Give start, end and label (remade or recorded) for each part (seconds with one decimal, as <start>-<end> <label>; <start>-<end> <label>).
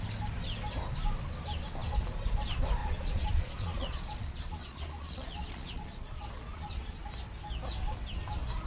0.0-2.8 recorded; 2.8-7.1 remade; 7.1-8.7 recorded